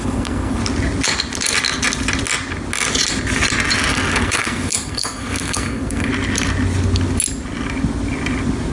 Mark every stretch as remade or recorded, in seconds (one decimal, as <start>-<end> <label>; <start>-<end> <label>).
0.0-0.6 remade; 0.6-3.9 recorded; 3.9-6.1 remade; 6.1-8.7 recorded